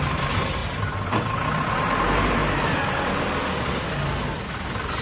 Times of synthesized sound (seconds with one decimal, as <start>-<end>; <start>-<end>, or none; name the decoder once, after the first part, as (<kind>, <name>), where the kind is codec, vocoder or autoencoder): 0.0-0.6 (vocoder, BigVGAN v2); 1.1-2.4